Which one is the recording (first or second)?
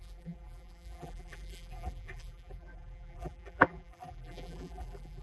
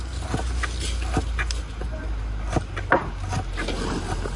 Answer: second